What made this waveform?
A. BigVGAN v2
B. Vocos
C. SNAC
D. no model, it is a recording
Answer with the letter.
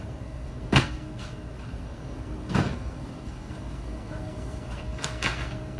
C